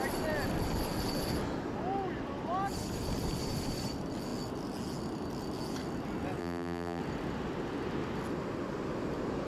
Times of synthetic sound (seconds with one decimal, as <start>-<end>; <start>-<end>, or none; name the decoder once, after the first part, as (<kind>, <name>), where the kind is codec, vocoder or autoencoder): 6.4-7.0 (vocoder, BigVGAN v2)